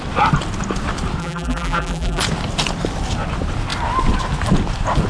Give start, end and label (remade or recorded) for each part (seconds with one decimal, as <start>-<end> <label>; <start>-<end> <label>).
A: 0.0-1.2 recorded; 1.2-2.2 remade; 2.2-5.1 recorded